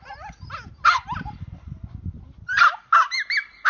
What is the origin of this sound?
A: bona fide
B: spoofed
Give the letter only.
A